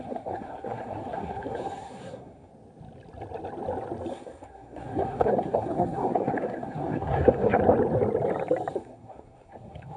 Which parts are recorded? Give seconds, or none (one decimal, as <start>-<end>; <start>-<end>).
2.5-4.1; 7.6-8.7

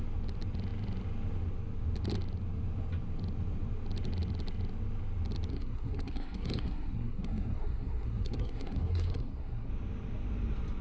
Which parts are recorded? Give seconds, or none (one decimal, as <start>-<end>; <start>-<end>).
0.0-5.5; 9.7-10.8

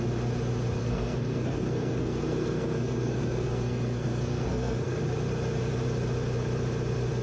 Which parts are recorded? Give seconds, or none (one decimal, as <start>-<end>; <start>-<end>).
0.0-0.8; 5.0-7.2

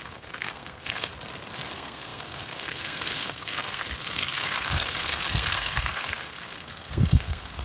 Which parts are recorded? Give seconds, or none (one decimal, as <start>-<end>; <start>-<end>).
1.1-1.7

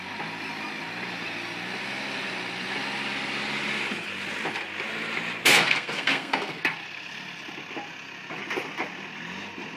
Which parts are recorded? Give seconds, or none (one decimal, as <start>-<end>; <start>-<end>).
0.0-5.4; 6.6-9.8

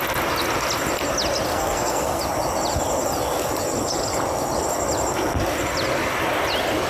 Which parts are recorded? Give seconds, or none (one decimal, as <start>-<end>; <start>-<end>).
0.0-1.5; 2.2-6.9

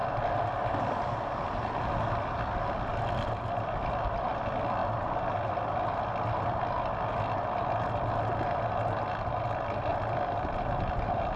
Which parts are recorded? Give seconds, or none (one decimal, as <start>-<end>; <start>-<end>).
0.0-11.4

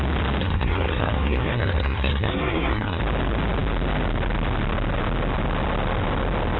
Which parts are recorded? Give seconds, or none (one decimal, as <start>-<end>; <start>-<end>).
0.0-0.4; 3.0-6.6